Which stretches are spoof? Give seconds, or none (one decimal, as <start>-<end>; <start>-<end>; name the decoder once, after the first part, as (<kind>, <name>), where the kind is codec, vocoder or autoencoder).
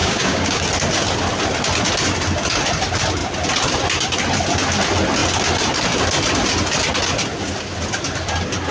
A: 0.0-0.6 (codec, DAC)